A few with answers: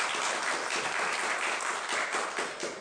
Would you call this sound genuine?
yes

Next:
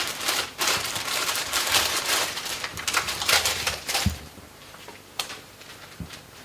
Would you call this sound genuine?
no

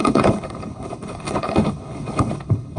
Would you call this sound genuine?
no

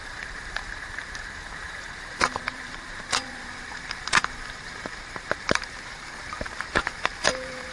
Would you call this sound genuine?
no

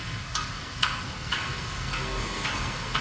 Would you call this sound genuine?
no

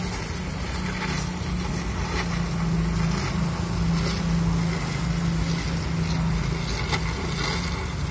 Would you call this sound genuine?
yes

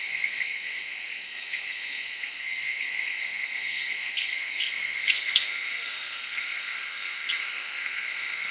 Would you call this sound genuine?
no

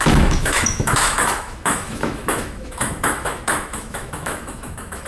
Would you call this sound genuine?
no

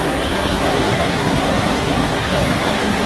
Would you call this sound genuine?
no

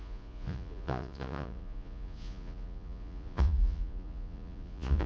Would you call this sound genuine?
no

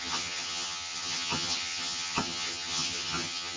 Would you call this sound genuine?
no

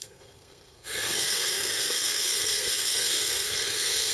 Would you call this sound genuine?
no